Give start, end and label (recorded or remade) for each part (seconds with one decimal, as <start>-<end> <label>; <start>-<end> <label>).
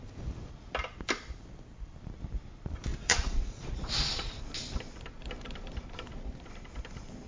0.0-2.9 recorded; 2.9-4.4 remade; 4.4-7.3 recorded